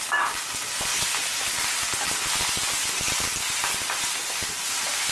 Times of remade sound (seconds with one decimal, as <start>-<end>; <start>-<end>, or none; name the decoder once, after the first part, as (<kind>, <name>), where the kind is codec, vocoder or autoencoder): none